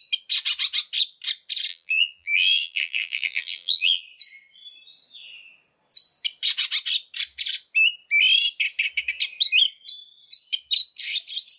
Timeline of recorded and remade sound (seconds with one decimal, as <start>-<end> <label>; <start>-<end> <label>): 0.0-1.7 recorded; 1.7-4.0 remade; 4.0-11.6 recorded